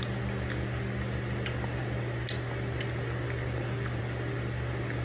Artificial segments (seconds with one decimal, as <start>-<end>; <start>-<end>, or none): none